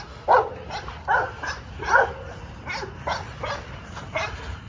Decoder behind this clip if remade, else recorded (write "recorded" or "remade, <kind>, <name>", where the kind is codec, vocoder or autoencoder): recorded